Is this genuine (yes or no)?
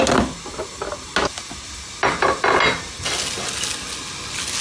yes